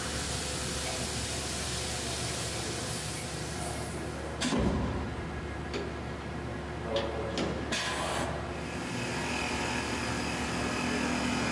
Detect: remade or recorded recorded